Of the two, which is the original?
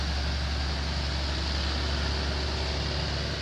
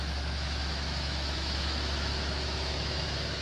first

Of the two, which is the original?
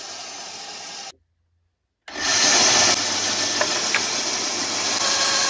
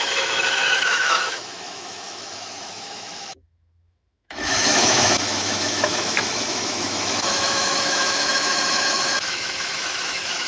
first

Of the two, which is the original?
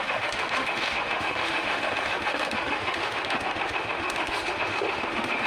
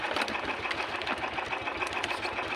second